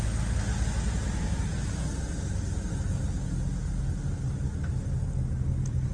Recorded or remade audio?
recorded